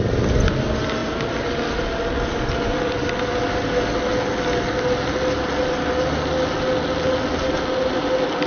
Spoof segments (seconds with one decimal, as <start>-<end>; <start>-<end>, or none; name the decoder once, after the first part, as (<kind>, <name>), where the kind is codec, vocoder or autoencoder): none